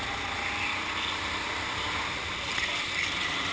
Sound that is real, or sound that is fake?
real